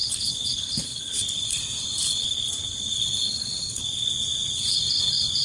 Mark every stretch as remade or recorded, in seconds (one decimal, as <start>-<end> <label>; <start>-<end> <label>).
0.0-1.6 remade; 1.6-2.1 recorded; 2.1-4.1 remade; 4.1-5.4 recorded